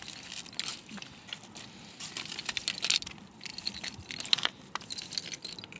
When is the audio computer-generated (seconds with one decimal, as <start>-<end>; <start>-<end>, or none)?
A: none